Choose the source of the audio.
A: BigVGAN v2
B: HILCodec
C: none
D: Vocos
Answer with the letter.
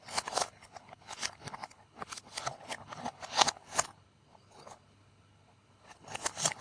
B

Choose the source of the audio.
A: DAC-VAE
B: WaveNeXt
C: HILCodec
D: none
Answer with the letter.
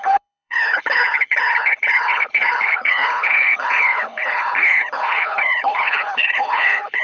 C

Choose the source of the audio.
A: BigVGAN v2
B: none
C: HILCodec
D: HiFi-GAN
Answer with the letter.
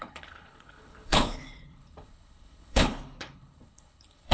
C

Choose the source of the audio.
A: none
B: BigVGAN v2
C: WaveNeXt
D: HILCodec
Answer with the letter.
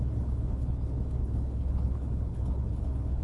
D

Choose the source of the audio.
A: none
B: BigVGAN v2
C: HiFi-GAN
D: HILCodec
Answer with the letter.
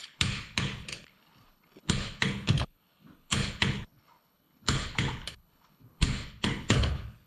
D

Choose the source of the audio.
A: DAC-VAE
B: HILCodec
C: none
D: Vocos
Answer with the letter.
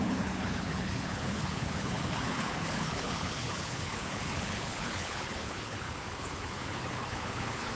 B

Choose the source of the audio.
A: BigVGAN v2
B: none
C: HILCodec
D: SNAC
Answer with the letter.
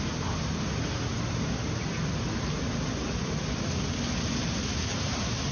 B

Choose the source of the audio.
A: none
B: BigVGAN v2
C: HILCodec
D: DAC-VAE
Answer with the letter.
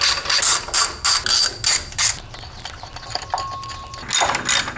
A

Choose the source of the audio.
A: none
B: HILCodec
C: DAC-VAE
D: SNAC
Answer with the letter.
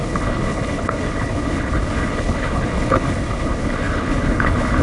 B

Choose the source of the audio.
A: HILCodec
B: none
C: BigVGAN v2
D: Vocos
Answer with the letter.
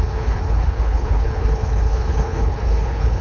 A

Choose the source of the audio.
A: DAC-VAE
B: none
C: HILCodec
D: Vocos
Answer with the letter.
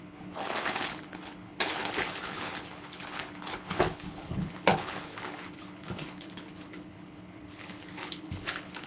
C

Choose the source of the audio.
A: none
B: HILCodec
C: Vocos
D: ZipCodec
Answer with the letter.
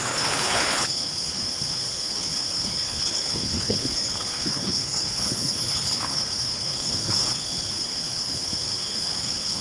B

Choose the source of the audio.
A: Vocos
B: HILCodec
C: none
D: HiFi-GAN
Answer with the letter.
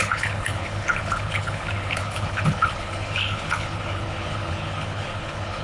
B